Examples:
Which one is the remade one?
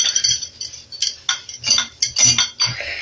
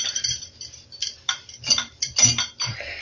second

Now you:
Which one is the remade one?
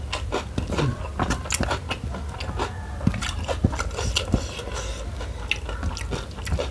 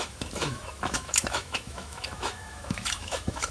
second